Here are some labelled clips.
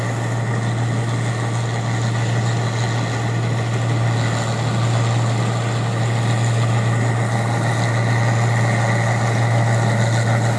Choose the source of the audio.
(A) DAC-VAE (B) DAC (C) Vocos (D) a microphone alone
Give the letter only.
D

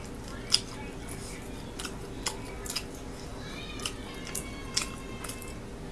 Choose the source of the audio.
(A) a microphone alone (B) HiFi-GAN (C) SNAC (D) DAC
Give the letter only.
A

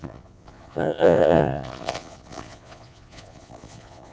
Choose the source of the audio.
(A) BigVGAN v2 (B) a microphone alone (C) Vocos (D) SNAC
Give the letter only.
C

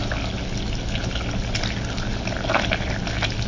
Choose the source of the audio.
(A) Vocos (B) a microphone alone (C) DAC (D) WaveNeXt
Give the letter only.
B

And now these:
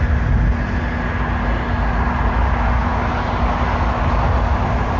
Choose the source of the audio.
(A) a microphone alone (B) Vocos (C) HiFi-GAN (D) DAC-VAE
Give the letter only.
A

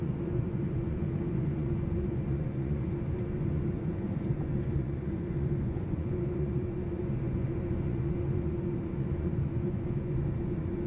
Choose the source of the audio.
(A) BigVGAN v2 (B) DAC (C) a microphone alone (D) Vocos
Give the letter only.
D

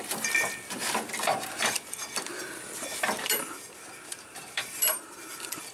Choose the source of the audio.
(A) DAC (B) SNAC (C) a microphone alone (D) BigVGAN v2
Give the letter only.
D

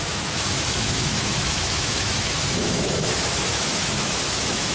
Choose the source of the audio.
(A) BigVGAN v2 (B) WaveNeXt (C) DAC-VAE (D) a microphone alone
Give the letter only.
C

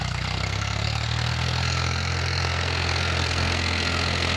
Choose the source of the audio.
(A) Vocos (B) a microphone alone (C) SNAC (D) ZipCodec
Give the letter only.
C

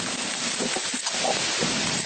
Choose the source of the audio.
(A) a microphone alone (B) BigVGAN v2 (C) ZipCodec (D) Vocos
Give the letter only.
A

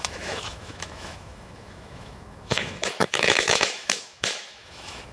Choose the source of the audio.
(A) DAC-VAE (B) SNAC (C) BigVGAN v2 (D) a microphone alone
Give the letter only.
A